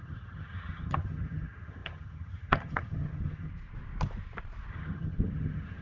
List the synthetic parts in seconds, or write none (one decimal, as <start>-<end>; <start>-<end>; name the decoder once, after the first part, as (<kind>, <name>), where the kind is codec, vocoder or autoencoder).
0.0-3.5 (vocoder, HiFi-GAN); 4.7-5.8